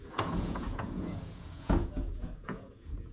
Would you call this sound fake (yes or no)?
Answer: yes